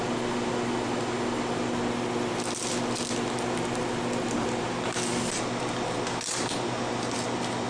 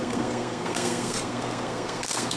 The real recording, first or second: first